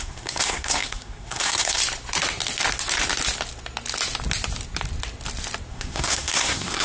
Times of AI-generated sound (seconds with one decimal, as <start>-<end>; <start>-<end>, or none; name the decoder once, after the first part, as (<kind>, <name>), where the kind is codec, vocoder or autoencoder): 0.0-1.8 (codec, SNAC); 5.7-6.8